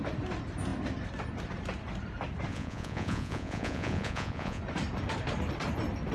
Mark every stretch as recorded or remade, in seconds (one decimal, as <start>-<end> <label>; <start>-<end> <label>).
0.0-2.5 recorded; 2.5-4.6 remade; 4.6-6.1 recorded